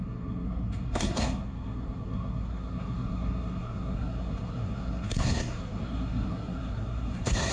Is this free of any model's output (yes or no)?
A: no